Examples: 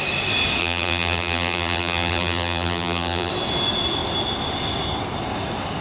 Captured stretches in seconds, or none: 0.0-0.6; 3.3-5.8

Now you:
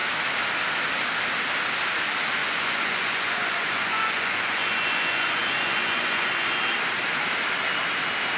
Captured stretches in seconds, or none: 0.0-2.4; 6.6-8.4

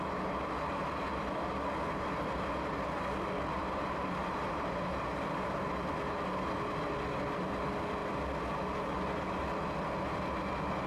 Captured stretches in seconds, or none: 0.0-3.6; 5.9-10.9

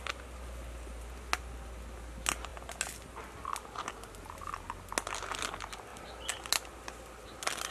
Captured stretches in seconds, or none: 0.0-7.7

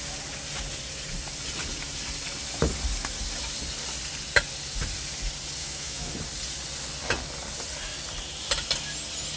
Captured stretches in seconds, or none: 0.0-5.6; 6.1-9.4

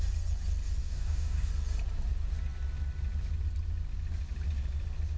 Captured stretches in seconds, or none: 0.0-0.8; 1.5-5.2

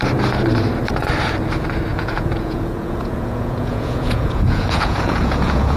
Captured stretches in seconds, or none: 0.0-1.9